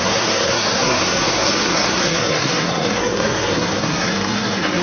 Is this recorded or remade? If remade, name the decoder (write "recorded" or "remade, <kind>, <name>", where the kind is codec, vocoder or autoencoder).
remade, codec, SNAC